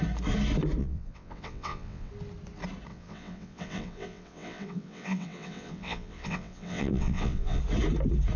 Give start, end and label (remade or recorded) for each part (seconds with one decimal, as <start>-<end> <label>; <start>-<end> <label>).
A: 0.0-0.8 recorded; 0.8-2.1 remade; 2.1-2.9 recorded; 2.9-7.6 remade; 7.6-8.4 recorded